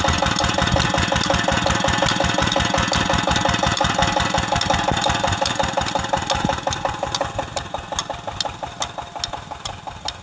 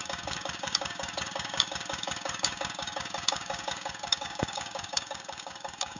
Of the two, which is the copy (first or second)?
second